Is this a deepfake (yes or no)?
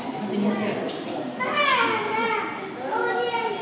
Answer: no